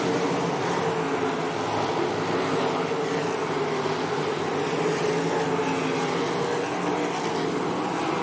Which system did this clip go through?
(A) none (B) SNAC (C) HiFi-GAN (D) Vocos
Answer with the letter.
A